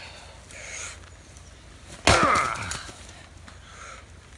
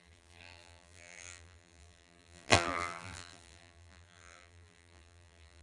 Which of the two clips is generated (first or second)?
second